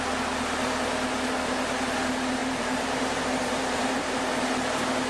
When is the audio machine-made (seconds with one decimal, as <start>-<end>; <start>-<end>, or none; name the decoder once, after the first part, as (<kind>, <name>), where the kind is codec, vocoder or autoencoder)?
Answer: 2.4-4.2 (vocoder, BigVGAN v2)